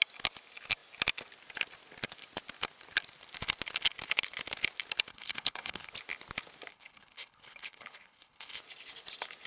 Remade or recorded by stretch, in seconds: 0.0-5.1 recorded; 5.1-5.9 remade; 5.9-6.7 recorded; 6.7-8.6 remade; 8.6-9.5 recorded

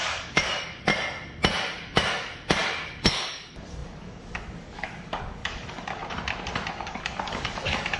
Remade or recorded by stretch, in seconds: 0.0-0.9 remade; 0.9-1.7 recorded; 1.7-6.0 remade; 6.0-6.7 recorded; 6.7-8.0 remade

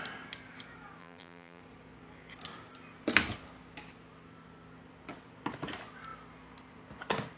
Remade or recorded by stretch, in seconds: 0.0-1.0 recorded; 1.0-1.6 remade; 1.6-7.4 recorded

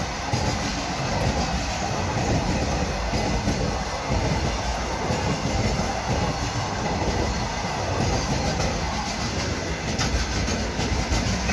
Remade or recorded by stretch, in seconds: 0.0-11.5 recorded

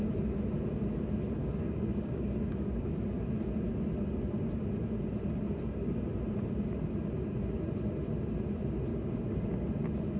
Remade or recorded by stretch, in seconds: 0.0-1.4 recorded; 1.4-2.9 remade; 2.9-8.9 recorded; 8.9-9.5 remade; 9.5-10.2 recorded

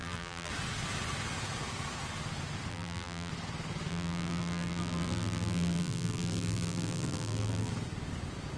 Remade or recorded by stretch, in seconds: 0.0-0.5 remade; 0.5-2.7 recorded; 2.7-3.3 remade; 3.3-3.9 recorded; 3.9-7.7 remade; 7.7-8.6 recorded

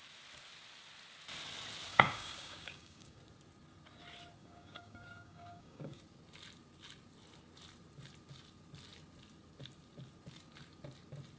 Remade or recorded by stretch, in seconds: 0.0-1.9 recorded; 1.9-3.2 remade; 3.2-4.4 recorded; 4.4-6.0 remade; 6.0-11.4 recorded